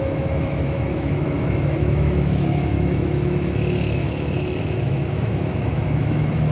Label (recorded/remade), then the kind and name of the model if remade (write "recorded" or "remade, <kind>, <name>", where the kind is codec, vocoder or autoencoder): remade, autoencoder, DAC-VAE